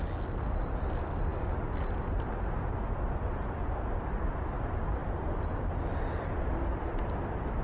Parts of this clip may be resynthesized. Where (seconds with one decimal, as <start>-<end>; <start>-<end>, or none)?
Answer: 5.0-7.1